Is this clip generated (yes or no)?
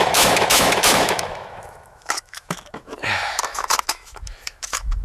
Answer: yes